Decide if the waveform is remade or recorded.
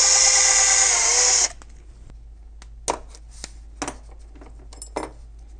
recorded